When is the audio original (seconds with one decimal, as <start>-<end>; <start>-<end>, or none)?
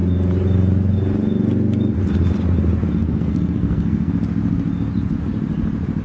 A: 0.0-3.0; 4.1-6.0